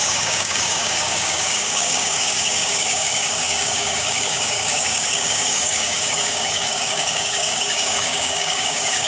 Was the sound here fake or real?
fake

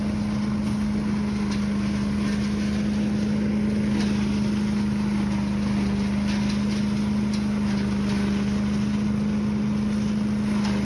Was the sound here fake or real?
real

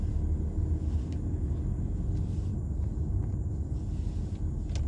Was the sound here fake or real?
real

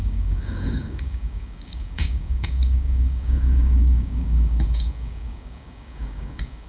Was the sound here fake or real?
fake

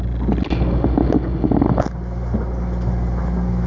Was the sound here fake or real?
real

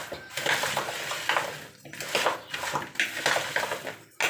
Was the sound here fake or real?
real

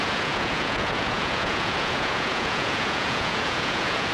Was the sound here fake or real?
fake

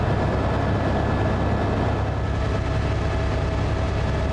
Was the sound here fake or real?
real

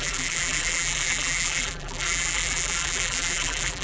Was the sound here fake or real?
fake